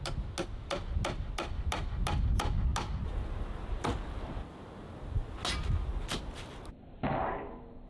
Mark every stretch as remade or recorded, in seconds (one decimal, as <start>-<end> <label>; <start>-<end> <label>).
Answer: 0.0-7.9 recorded